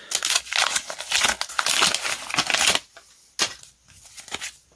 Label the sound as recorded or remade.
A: recorded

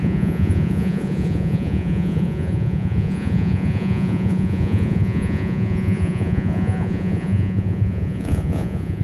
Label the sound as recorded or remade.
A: remade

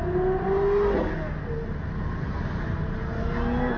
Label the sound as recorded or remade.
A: recorded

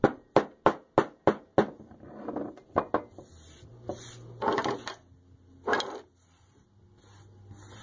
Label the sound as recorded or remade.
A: recorded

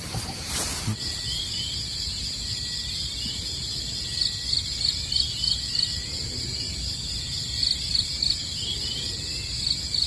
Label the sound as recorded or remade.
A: recorded